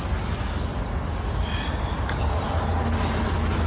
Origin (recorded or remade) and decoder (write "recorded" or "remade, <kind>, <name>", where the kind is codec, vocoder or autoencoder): recorded